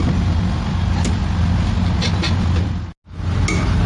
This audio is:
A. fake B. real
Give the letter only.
B